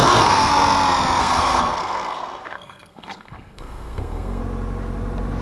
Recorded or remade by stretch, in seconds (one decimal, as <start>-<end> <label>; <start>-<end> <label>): 0.0-0.5 remade; 0.5-1.2 recorded; 1.2-4.4 remade; 4.4-5.4 recorded